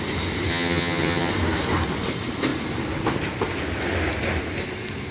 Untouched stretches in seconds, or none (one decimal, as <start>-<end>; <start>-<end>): 0.0-0.5; 1.3-5.1